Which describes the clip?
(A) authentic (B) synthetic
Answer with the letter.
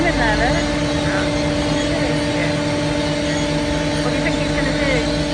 A